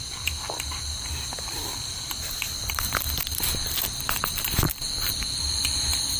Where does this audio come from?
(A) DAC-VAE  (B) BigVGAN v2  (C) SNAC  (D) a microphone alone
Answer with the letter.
B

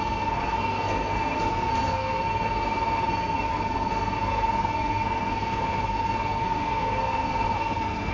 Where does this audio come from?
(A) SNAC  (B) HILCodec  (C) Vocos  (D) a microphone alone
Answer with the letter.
A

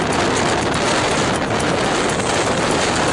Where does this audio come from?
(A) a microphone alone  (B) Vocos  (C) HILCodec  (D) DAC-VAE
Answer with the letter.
A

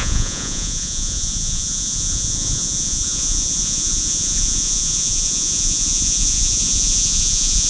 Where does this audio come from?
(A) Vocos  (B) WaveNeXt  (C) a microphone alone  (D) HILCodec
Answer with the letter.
A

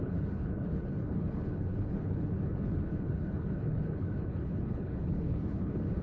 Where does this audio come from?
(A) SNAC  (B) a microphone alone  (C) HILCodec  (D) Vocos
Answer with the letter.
C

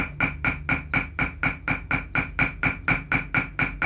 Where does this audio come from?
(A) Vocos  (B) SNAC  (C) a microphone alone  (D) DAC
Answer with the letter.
C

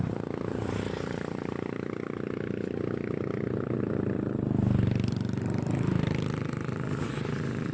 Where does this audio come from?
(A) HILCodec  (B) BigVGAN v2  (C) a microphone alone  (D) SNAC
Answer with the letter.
B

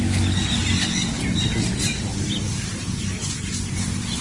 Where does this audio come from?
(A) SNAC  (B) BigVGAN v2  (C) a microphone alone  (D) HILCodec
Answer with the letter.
C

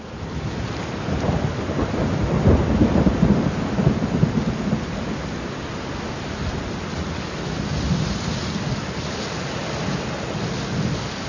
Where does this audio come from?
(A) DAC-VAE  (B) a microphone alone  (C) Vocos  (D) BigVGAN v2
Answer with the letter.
B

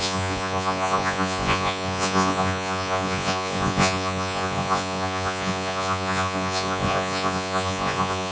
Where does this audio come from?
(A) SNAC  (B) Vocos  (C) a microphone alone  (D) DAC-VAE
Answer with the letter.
B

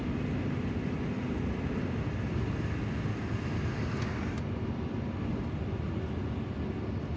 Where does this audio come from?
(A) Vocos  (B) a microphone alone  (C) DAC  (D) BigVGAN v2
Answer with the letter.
B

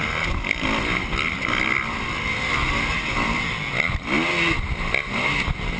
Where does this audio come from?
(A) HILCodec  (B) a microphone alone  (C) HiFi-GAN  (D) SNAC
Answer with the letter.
B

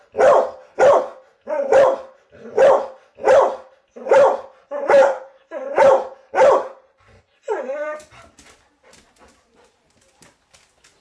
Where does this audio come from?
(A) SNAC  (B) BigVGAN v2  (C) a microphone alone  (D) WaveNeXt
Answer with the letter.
B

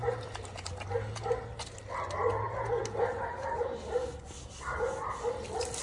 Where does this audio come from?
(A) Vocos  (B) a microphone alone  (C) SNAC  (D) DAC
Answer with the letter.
B